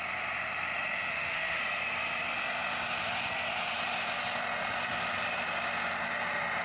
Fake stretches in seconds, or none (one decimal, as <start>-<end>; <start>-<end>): 1.1-1.6